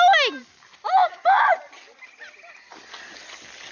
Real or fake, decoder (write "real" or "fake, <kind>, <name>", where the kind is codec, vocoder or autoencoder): real